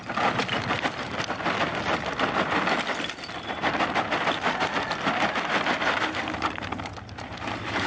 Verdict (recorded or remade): recorded